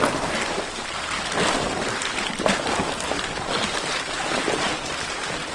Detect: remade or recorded remade